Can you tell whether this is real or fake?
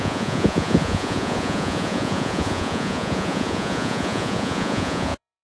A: fake